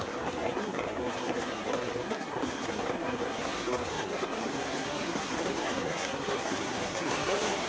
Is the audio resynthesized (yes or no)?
yes